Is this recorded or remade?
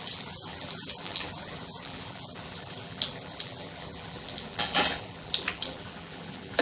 remade